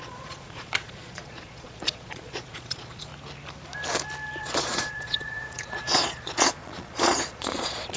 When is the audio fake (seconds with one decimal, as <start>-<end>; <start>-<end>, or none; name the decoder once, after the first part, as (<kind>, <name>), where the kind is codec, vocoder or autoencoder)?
0.0-3.1 (vocoder, Vocos); 4.4-8.0